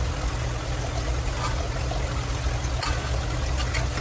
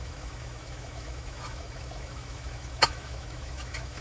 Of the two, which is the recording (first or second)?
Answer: first